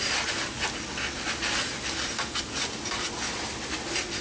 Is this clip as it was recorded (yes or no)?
yes